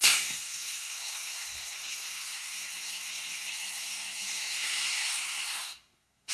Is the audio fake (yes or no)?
yes